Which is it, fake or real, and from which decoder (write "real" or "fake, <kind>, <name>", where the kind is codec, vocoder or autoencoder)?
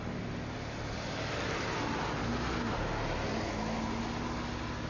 real